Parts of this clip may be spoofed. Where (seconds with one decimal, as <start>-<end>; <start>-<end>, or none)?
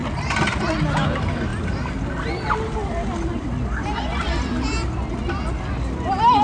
none